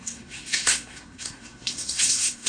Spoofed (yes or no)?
yes